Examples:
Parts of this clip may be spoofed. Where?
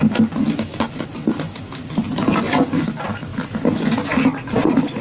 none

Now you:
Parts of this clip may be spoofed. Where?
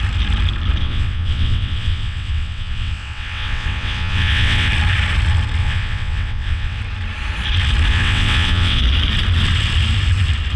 0.8-4.7 (vocoder, WaveNeXt); 5.6-6.8; 7.9-8.8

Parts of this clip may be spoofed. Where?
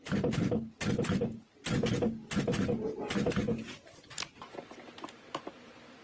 none